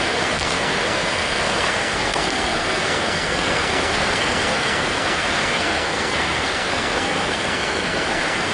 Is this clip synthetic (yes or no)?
yes